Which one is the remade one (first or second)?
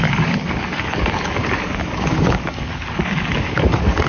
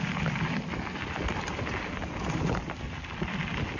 first